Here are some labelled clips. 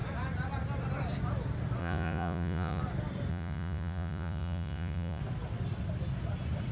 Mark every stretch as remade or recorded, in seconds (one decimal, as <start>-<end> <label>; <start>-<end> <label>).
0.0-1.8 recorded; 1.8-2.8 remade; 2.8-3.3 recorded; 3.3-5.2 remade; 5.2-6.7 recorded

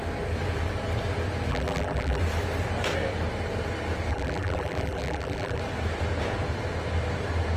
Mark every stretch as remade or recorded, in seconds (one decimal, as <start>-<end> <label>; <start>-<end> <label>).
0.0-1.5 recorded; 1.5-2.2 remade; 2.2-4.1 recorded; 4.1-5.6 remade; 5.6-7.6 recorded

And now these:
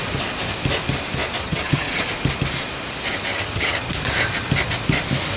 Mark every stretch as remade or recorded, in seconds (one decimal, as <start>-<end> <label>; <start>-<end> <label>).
0.0-1.4 recorded; 1.4-2.0 remade; 2.0-3.3 recorded; 3.3-3.9 remade; 3.9-5.4 recorded